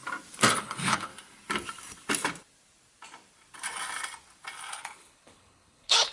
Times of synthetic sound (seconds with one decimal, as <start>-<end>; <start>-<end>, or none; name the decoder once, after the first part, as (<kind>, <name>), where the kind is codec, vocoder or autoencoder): 0.6-1.1 (codec, HILCodec); 4.7-6.1